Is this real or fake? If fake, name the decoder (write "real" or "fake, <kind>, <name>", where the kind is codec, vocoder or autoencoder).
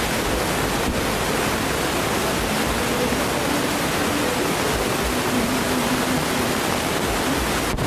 real